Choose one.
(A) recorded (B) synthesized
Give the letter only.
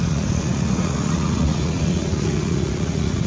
B